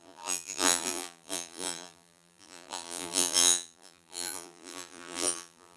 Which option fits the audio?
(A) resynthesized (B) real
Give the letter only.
A